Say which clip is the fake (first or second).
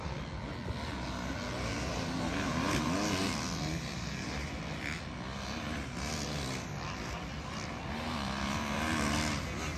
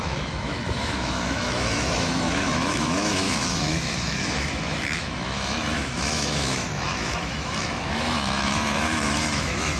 second